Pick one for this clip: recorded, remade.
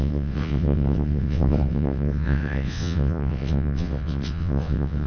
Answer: remade